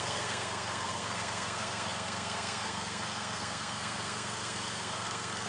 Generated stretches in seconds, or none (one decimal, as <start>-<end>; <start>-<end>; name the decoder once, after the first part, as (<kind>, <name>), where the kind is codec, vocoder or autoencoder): 0.0-5.5 (codec, SNAC)